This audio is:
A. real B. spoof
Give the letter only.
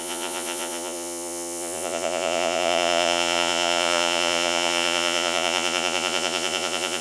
B